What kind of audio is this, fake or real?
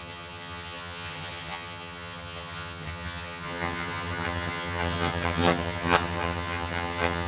fake